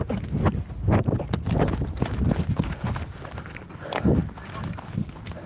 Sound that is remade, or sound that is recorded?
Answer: recorded